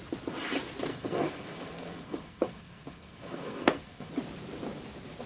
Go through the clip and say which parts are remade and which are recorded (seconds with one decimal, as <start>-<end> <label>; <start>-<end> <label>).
0.0-0.9 recorded; 0.9-4.1 remade; 4.1-5.3 recorded

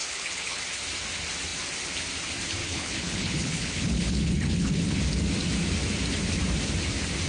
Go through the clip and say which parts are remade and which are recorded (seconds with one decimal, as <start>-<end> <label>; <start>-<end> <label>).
0.0-0.6 remade; 0.6-2.6 recorded; 2.6-5.0 remade; 5.0-7.3 recorded